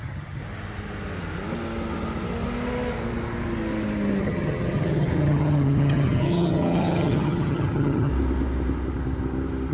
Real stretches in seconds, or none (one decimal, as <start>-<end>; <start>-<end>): 0.4-4.2; 8.1-9.7